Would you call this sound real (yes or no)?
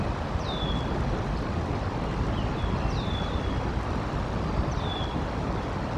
yes